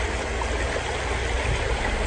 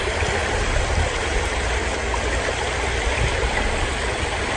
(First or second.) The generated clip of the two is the second